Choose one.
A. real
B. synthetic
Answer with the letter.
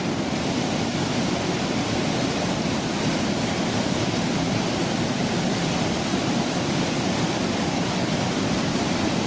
B